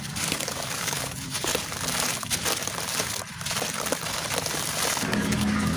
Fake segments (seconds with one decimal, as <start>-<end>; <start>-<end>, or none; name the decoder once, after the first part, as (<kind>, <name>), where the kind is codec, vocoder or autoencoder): 0.0-1.5 (codec, DAC); 5.0-5.8